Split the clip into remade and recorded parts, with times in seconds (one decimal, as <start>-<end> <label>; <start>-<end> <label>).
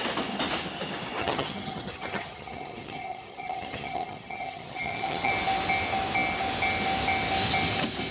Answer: 0.0-1.2 recorded; 1.2-5.3 remade; 5.3-8.1 recorded